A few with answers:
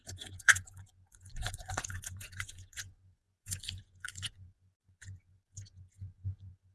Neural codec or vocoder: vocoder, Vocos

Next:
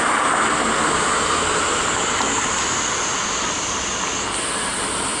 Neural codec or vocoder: none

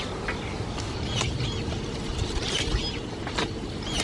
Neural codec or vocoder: none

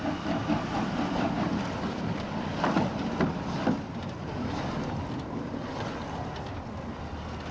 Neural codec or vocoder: vocoder, BigVGAN v2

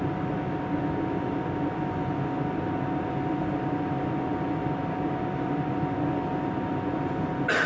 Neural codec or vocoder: none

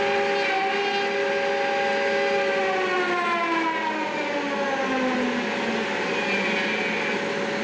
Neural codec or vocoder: none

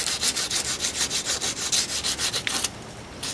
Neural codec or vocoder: none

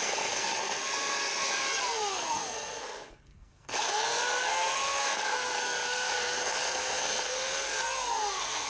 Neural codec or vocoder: codec, SNAC